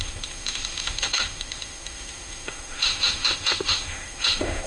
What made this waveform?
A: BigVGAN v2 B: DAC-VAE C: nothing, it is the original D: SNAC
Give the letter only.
B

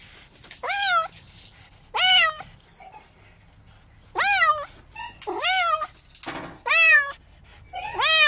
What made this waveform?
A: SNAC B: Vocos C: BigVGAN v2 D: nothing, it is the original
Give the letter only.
D